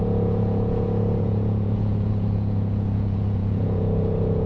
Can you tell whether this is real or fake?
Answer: fake